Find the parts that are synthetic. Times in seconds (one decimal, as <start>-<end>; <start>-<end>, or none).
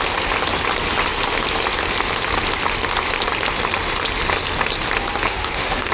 5.3-5.9